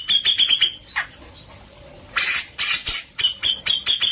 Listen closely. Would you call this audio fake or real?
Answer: real